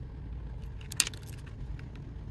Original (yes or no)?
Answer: yes